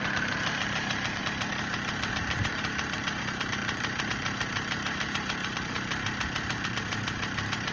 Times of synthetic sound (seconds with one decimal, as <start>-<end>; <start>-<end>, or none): 0.0-1.2; 2.1-7.7